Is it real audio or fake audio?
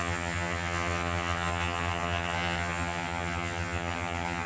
fake